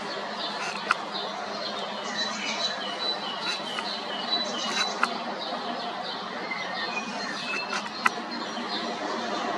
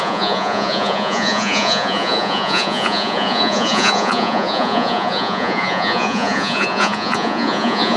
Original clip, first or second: first